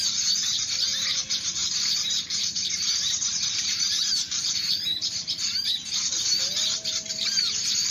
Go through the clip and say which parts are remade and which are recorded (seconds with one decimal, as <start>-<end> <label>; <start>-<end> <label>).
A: 0.0-7.9 remade